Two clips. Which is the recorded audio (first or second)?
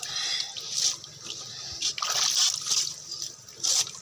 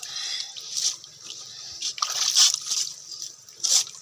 first